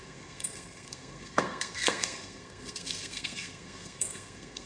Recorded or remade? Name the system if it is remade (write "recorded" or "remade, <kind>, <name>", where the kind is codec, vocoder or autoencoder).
remade, codec, SNAC